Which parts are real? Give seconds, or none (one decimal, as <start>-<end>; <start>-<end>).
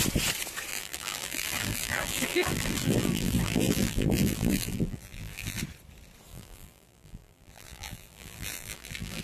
0.0-0.7; 5.6-6.3